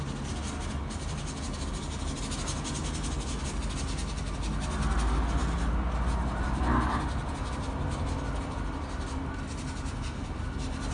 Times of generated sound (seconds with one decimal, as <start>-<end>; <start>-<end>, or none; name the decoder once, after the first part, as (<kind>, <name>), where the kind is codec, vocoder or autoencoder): none